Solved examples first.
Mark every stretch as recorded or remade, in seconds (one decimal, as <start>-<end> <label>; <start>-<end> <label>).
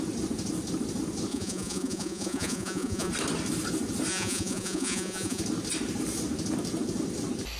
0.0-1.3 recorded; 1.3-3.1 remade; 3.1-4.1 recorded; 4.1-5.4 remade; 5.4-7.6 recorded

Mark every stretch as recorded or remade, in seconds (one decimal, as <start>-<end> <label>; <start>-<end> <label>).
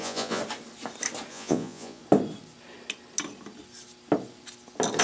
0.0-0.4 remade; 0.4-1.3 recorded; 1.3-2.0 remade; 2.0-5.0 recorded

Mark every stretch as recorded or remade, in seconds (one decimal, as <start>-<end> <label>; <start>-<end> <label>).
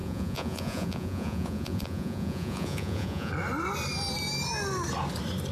0.0-3.3 remade; 3.3-5.5 recorded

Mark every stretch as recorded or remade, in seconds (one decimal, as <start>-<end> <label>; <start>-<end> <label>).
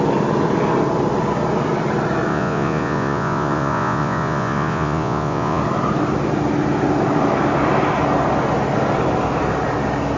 0.0-2.3 recorded; 2.3-5.6 remade; 5.6-10.2 recorded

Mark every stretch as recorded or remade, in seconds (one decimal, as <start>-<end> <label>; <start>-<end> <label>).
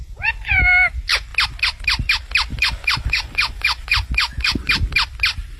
0.0-0.6 remade; 0.6-2.5 recorded; 2.5-4.7 remade; 4.7-5.6 recorded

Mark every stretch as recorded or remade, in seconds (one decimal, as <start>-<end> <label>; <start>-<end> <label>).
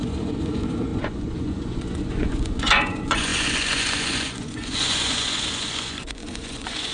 0.0-6.9 remade